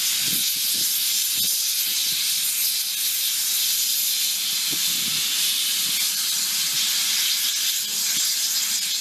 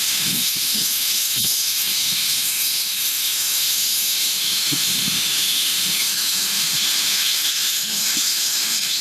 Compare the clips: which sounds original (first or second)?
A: first